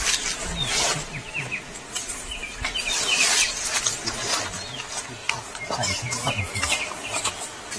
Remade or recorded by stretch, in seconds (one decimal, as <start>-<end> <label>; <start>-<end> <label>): 0.0-5.2 recorded; 5.2-6.4 remade; 6.4-7.8 recorded